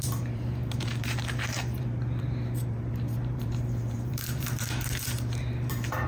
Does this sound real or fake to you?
fake